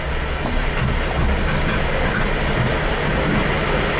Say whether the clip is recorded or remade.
recorded